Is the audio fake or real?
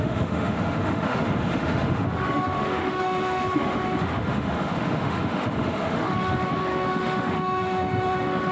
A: fake